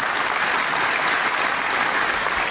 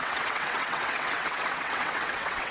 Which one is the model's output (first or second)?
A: second